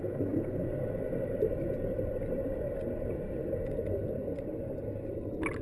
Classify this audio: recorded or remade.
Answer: recorded